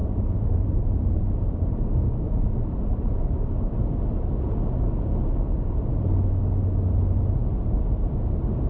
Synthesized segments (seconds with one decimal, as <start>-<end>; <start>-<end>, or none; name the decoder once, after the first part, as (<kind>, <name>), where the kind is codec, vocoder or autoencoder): 0.0-3.7 (vocoder, BigVGAN v2)